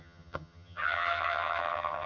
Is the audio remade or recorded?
remade